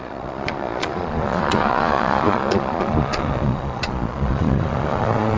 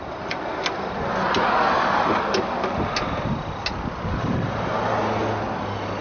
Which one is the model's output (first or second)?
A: first